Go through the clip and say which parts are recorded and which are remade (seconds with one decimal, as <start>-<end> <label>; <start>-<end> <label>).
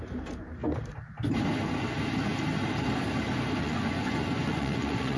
0.0-3.6 recorded; 3.6-5.2 remade